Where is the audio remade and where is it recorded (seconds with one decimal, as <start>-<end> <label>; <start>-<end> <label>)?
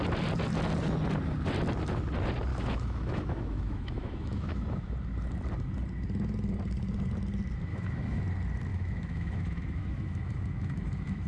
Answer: 0.0-2.5 recorded; 2.5-4.9 remade; 4.9-7.7 recorded; 7.7-8.2 remade; 8.2-8.7 recorded; 8.7-11.3 remade